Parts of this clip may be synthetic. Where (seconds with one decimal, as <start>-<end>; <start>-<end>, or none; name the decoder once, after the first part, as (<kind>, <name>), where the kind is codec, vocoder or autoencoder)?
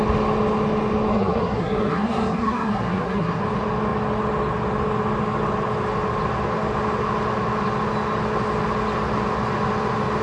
1.1-3.4 (codec, SNAC)